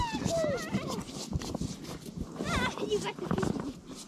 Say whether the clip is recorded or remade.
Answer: recorded